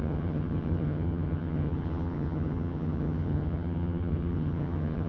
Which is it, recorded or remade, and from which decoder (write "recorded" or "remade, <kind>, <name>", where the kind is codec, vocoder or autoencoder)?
remade, vocoder, HiFi-GAN